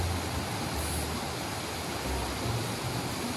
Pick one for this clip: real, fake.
real